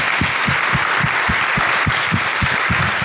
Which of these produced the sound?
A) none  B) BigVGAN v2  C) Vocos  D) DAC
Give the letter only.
A